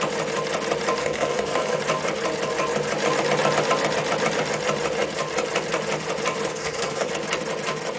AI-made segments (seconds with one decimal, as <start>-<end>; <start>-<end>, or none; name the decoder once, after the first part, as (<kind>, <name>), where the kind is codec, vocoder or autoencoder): 1.0-1.8 (codec, SNAC); 6.5-7.1

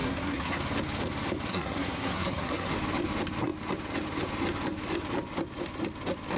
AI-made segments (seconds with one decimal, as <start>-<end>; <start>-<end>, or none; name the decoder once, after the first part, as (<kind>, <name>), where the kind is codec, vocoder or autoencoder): 0.0-0.6 (codec, SNAC); 1.5-2.7

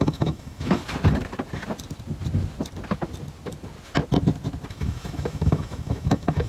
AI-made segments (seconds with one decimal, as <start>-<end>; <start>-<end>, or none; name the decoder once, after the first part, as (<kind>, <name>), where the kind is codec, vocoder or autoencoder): 0.0-0.8 (autoencoder, DAC-VAE); 4.7-6.5

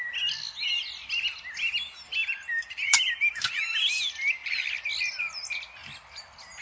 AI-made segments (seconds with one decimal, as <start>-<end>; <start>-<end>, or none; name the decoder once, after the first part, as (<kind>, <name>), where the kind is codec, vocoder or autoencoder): 2.2-4.0 (vocoder, BigVGAN v2)

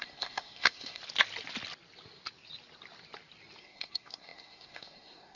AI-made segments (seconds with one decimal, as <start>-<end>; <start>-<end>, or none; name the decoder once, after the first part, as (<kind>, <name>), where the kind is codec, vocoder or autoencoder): 0.0-1.0 (codec, SNAC); 3.6-5.4

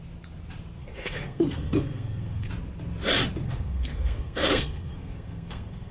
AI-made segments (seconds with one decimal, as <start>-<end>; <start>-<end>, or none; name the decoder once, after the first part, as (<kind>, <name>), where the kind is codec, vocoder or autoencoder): 0.8-2.5 (codec, SNAC); 3.4-5.9

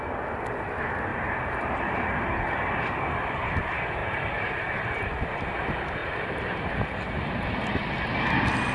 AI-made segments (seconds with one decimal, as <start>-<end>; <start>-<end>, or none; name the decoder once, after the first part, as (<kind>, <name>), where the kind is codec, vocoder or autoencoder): 1.1-1.8 (vocoder, BigVGAN v2); 4.0-5.1; 6.0-7.1

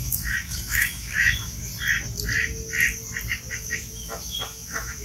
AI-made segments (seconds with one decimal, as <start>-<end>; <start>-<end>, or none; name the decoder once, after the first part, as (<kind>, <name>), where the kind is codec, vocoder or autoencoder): 0.0-1.7 (autoencoder, DAC-VAE); 3.5-5.0